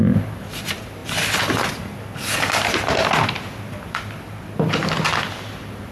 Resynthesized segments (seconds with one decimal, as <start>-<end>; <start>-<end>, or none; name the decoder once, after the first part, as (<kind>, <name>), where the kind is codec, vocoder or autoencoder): none